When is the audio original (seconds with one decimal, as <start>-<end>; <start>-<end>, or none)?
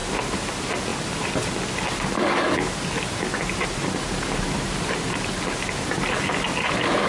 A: 0.0-7.1